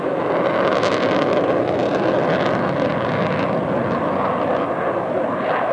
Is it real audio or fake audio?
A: real